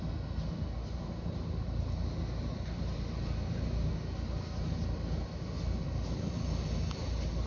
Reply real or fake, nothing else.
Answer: real